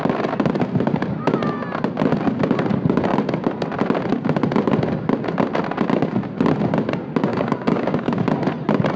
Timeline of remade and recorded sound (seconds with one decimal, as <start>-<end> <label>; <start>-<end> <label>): 0.0-7.3 recorded; 7.3-8.1 remade; 8.1-9.0 recorded